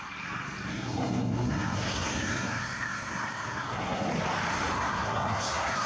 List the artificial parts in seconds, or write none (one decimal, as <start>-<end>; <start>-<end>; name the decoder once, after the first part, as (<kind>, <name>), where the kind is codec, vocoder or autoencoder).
0.7-4.1 (codec, SNAC); 4.5-5.9